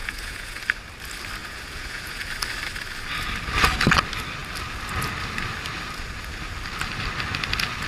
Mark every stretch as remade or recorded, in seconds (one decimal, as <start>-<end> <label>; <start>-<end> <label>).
0.0-0.6 remade; 0.6-1.4 recorded; 1.4-2.2 remade; 2.2-7.9 recorded